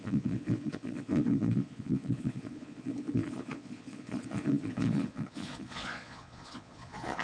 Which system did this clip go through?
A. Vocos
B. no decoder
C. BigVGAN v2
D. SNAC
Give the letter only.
A